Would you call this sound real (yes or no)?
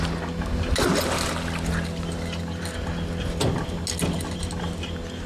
yes